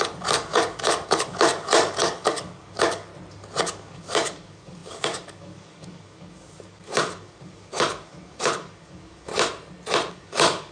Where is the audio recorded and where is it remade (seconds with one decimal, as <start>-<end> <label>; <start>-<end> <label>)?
0.0-3.1 remade; 3.1-3.6 recorded; 3.6-9.3 remade; 9.3-10.1 recorded; 10.1-10.7 remade